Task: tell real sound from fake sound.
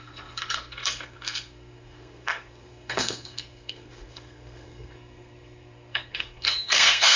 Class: fake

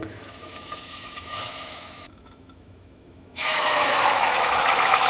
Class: fake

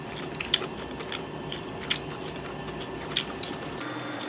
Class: real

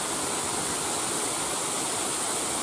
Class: real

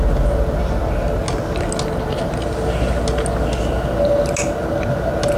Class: real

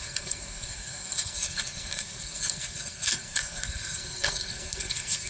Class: fake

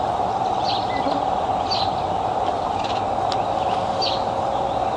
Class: real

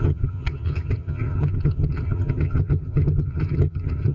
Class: fake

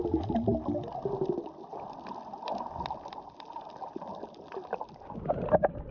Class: real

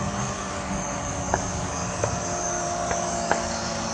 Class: fake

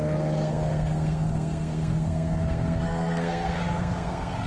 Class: fake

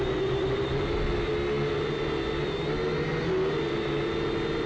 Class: real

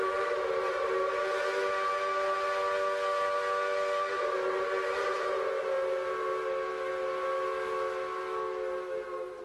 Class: real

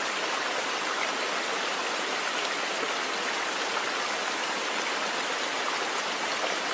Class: real